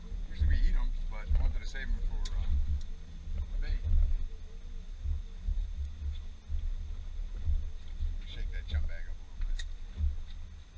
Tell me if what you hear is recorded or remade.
recorded